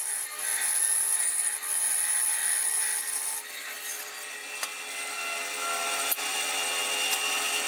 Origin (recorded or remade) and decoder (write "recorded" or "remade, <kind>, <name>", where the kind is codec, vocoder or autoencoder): recorded